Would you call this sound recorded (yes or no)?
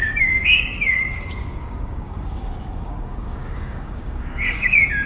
no